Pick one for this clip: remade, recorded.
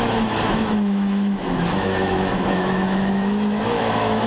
remade